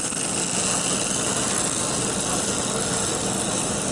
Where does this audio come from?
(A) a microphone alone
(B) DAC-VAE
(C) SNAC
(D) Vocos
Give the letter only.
A